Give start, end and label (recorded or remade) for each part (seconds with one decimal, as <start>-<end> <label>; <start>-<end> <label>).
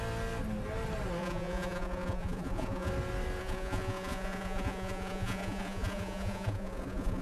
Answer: 0.0-1.2 recorded; 1.2-2.9 remade; 2.9-3.4 recorded; 3.4-7.2 remade